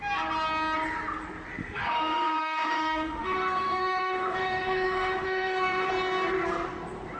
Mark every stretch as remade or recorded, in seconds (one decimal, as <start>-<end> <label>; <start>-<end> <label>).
0.0-1.6 recorded; 1.6-5.9 remade; 5.9-7.2 recorded